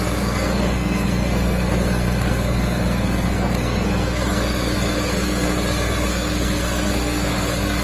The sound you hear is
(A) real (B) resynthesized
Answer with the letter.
B